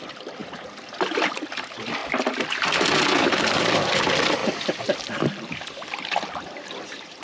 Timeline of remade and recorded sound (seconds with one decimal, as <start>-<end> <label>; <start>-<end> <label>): 0.0-2.0 remade; 2.0-3.6 recorded; 3.6-4.4 remade; 4.4-5.4 recorded; 5.4-7.2 remade